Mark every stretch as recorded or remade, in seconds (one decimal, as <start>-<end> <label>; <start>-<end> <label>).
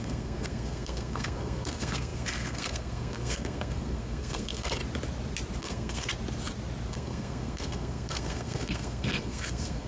0.0-4.8 remade; 4.8-5.6 recorded; 5.6-6.1 remade; 6.1-6.9 recorded; 6.9-9.9 remade